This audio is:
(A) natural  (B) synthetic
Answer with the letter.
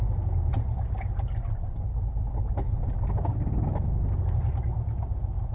A